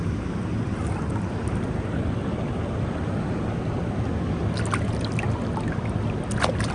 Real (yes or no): yes